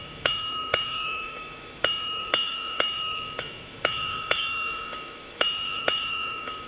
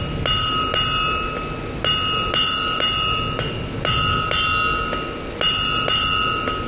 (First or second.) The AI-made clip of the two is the first